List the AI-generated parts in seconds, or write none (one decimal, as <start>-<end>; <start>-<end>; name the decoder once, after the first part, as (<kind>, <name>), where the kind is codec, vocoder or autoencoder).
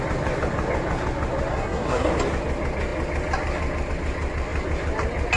1.5-2.1 (codec, SNAC)